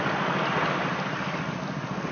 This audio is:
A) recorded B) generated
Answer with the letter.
A